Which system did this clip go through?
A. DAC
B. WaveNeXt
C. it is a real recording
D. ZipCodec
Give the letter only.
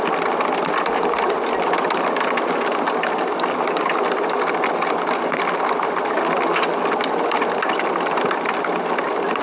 C